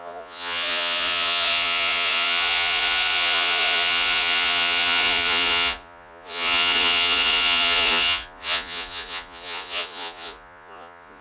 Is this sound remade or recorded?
remade